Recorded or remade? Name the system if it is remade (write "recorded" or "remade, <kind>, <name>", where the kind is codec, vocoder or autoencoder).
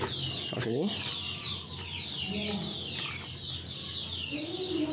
recorded